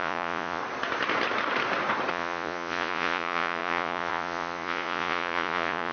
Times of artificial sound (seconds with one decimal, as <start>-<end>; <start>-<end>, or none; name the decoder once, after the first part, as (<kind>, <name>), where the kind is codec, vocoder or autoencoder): 0.0-0.6 (vocoder, Vocos); 2.1-5.9